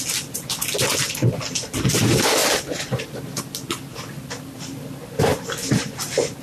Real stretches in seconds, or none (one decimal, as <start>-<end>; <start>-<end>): 0.0-6.4